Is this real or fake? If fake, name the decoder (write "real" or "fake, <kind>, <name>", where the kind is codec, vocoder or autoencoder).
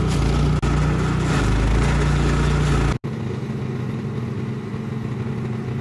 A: real